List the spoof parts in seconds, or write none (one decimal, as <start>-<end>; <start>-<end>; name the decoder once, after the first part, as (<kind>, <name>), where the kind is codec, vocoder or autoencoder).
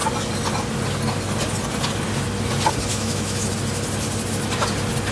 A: 2.9-3.5 (autoencoder, DAC-VAE)